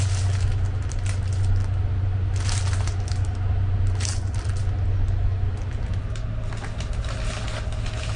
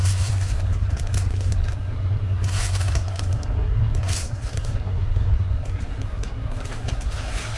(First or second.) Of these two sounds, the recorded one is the first